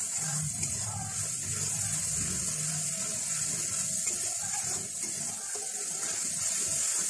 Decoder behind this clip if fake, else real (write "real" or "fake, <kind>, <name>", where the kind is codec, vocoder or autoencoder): real